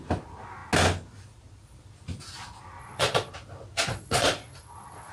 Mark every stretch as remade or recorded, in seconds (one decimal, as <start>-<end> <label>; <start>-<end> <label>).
0.0-2.8 recorded; 2.8-3.3 remade; 3.3-3.9 recorded; 3.9-5.1 remade